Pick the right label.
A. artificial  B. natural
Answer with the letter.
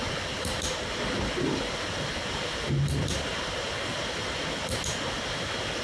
B